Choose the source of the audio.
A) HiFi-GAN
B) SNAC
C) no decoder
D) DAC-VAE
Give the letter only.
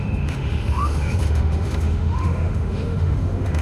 D